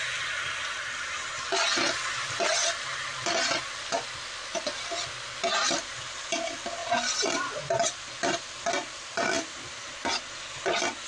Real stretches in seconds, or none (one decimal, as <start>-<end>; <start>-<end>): 0.0-8.8; 9.9-11.1